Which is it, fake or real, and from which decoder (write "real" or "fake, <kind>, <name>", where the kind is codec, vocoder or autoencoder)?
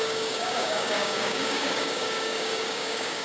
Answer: fake, codec, DAC